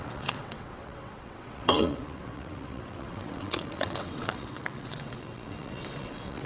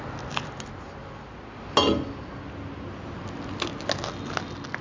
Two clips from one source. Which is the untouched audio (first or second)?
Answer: second